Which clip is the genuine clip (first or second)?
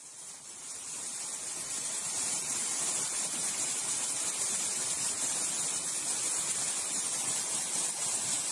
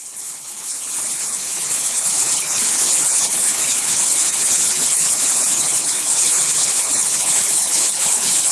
first